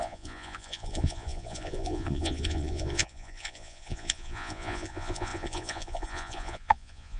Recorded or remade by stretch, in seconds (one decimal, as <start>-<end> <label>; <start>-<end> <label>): 0.0-7.2 remade